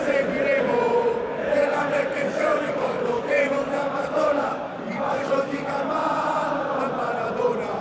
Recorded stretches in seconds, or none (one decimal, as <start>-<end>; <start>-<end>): 0.0-1.3; 5.9-7.8